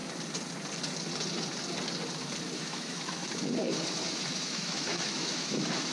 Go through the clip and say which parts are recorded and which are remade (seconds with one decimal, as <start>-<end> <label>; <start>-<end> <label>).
0.0-2.6 recorded; 2.6-3.2 remade; 3.2-4.3 recorded; 4.3-5.9 remade